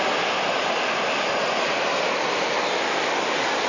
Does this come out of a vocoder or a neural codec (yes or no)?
no